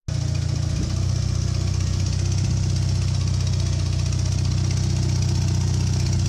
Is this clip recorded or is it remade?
recorded